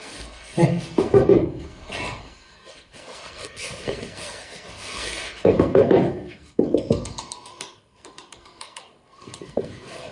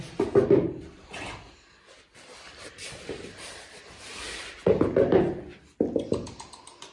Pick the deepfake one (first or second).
first